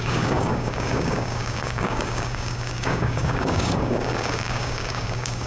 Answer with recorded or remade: remade